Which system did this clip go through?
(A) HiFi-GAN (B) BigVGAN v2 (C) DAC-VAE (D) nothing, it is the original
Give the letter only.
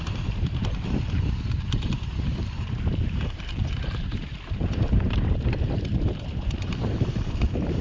B